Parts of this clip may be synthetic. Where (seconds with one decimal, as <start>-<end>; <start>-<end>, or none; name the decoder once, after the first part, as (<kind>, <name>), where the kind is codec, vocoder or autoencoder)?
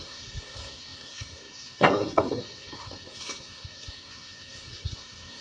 0.0-5.4 (codec, SNAC)